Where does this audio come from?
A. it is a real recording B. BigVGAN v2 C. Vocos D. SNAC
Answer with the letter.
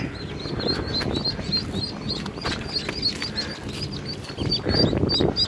A